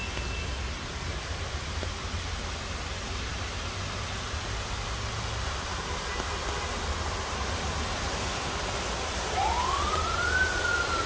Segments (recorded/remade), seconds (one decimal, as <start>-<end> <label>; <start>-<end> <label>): 0.0-11.1 recorded